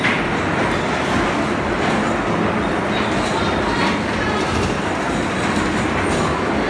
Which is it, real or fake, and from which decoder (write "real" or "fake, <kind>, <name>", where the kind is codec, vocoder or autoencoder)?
real